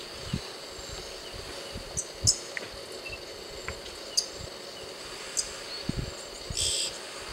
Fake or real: real